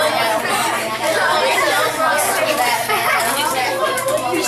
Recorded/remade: recorded